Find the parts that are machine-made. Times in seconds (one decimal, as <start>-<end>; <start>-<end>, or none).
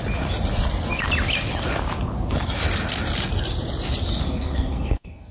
4.2-5.3